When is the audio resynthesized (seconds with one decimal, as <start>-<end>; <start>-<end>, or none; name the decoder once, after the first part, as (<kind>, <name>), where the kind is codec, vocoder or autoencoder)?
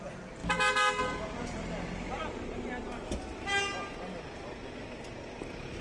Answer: none